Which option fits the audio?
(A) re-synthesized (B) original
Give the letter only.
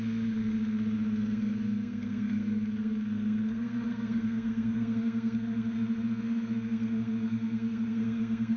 A